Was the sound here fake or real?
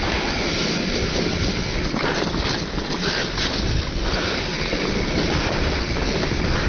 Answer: real